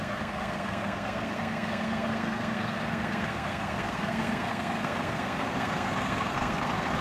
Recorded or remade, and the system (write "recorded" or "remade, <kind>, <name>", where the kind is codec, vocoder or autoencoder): remade, codec, SNAC